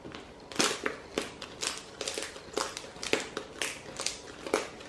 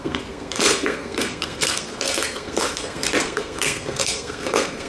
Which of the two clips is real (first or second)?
first